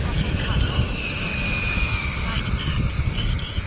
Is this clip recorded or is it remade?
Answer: recorded